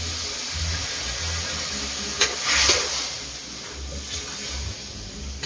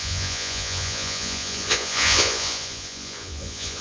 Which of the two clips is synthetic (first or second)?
second